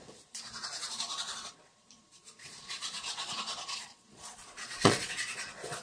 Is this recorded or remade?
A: remade